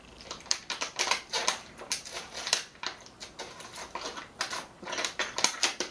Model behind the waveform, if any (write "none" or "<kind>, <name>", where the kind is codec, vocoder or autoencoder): vocoder, BigVGAN v2